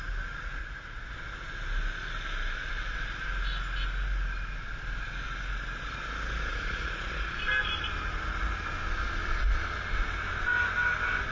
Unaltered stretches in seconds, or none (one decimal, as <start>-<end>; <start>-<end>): 0.0-0.6; 1.1-6.5; 7.1-11.3